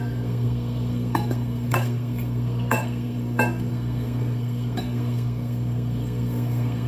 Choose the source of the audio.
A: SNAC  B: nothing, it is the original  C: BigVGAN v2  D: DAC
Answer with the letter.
A